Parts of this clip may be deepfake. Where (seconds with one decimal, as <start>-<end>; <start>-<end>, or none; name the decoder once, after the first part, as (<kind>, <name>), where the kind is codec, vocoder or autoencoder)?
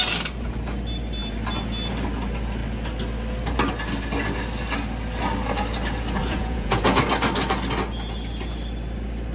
6.2-7.0 (vocoder, Vocos)